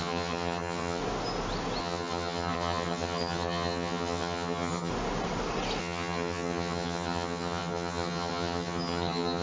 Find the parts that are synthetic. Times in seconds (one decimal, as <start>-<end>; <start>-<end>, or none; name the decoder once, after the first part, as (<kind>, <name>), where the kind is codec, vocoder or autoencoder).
0.0-1.0 (vocoder, HiFi-GAN); 1.8-4.9; 5.8-9.4